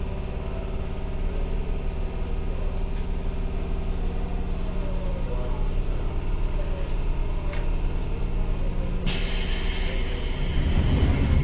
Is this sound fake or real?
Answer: real